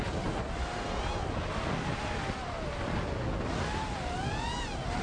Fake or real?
real